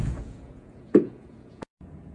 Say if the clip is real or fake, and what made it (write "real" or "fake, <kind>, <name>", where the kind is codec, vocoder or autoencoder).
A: fake, vocoder, Vocos